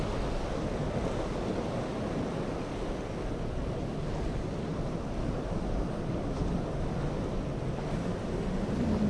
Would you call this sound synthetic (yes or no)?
no